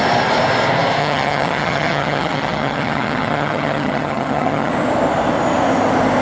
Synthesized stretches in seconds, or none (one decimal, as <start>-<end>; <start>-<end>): 1.0-4.7